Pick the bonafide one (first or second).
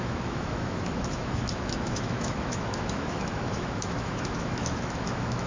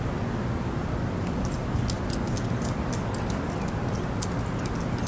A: second